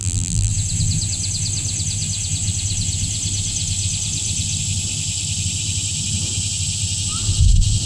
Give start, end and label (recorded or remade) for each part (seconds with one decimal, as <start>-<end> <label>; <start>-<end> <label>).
0.0-0.5 remade; 0.5-7.9 recorded